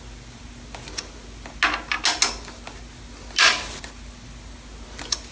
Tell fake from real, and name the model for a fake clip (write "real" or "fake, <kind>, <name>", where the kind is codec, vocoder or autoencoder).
real